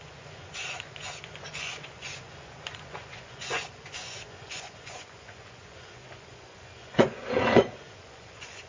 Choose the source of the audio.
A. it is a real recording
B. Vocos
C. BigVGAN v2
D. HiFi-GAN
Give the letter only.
B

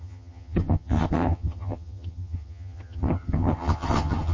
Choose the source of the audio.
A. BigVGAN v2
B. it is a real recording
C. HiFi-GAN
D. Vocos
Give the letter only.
C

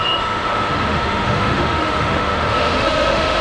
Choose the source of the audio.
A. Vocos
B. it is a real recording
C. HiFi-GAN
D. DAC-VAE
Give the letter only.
D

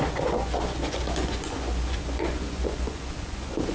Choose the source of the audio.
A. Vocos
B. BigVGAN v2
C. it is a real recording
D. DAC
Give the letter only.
A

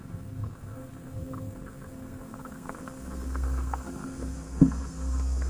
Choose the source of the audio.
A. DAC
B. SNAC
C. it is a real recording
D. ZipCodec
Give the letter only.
B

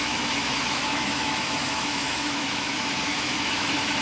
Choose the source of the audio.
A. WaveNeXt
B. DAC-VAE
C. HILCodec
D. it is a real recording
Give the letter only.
B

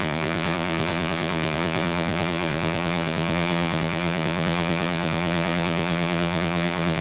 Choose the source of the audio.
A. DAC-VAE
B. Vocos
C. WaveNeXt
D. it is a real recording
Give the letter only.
B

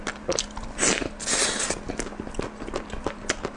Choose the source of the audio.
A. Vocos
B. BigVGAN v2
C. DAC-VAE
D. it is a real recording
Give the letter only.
D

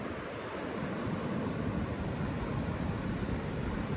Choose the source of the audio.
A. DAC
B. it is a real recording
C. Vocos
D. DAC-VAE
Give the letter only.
B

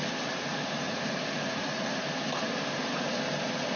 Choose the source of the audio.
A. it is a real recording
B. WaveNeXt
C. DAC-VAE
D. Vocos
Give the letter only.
A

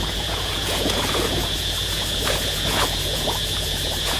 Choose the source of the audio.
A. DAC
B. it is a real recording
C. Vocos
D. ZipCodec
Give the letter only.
C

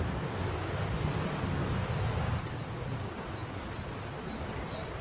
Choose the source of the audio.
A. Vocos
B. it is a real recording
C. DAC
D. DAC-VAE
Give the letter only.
B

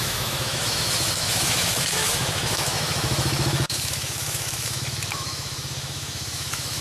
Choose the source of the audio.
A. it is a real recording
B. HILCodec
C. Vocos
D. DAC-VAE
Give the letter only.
D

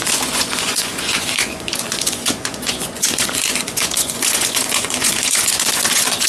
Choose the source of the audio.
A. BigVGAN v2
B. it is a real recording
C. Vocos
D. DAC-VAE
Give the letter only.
C